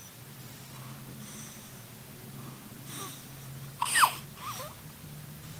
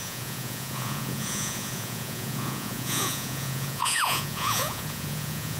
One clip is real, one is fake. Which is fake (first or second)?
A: second